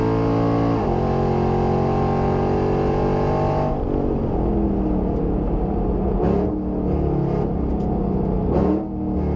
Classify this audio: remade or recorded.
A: recorded